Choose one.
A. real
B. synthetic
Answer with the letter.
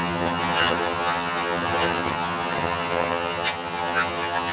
B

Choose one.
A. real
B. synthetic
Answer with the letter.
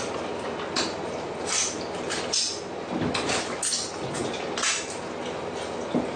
A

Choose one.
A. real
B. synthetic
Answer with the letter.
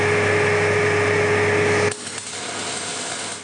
A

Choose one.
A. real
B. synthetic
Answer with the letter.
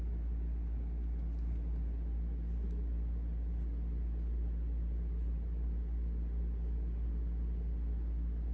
A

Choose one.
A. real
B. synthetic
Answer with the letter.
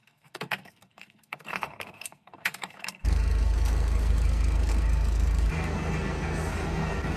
B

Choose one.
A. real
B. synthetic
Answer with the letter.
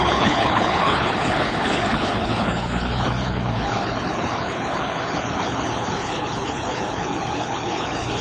B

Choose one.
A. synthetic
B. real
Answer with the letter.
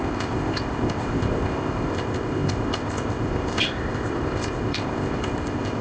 A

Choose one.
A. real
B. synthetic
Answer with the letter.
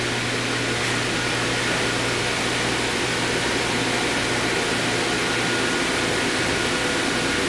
A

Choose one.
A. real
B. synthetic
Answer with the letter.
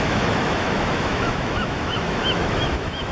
B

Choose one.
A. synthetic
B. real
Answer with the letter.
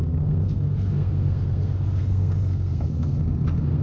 A